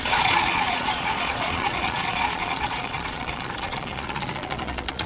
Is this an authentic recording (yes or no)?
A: no